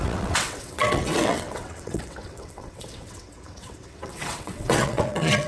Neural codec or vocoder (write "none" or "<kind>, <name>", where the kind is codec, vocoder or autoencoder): vocoder, WaveNeXt